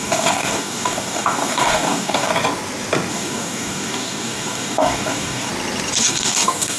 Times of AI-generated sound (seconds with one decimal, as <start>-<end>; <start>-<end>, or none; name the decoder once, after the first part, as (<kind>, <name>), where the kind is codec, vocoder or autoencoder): 0.0-2.3 (codec, DAC); 3.1-5.5; 6.0-6.8